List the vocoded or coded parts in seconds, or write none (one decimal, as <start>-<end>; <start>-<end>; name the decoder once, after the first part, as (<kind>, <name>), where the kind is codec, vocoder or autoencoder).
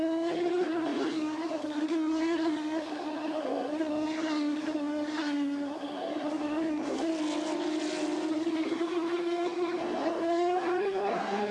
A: 0.0-7.1 (codec, SNAC); 8.3-11.5